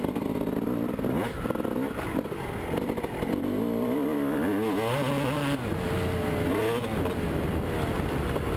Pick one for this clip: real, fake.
real